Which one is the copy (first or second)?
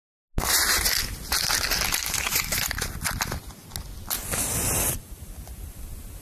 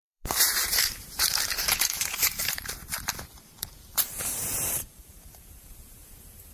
second